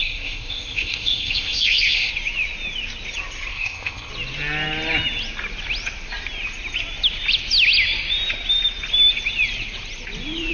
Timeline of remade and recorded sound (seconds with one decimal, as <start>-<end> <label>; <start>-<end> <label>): 0.0-2.1 remade; 2.1-3.5 recorded; 3.5-4.1 remade; 4.1-10.5 recorded